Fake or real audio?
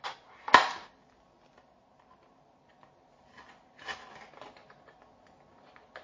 real